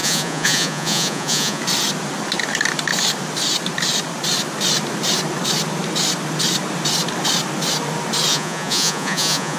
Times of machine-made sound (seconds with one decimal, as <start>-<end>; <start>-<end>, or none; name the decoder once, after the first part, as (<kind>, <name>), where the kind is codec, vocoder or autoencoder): 0.0-1.6 (vocoder, Vocos); 8.3-9.6